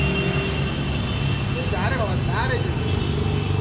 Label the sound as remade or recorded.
recorded